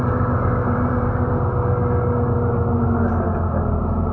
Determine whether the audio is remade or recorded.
recorded